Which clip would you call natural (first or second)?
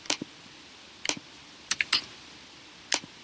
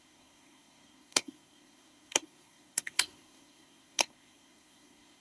first